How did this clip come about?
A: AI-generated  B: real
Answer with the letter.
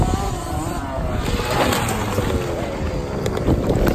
B